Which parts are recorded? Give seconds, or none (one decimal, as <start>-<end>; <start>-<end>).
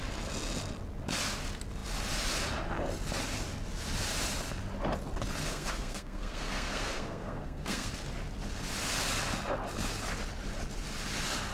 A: 0.0-5.4; 7.9-11.5